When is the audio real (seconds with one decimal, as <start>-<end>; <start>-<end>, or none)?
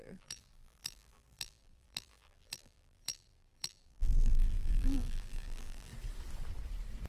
5.9-7.1